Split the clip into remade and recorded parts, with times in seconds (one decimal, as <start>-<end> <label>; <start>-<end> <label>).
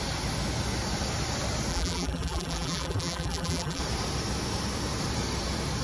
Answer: 0.0-1.7 recorded; 1.7-3.8 remade; 3.8-5.8 recorded